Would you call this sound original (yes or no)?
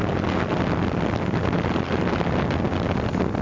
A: yes